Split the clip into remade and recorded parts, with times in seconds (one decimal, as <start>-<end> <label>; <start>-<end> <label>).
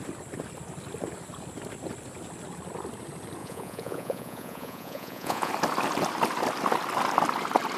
0.0-3.4 recorded; 3.4-5.5 remade; 5.5-7.8 recorded